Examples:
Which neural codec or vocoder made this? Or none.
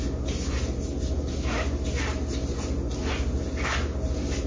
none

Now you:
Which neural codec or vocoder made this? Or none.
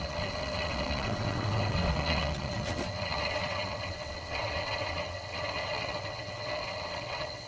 vocoder, WaveNeXt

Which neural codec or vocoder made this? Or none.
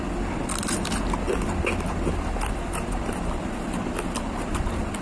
none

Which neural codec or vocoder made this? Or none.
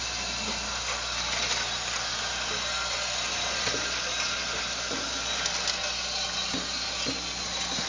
none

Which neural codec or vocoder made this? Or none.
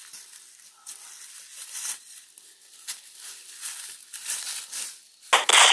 none